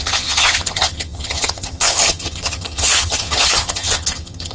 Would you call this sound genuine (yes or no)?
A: no